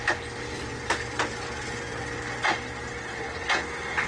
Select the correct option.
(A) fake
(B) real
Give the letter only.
B